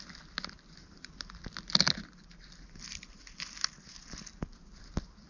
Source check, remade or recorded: recorded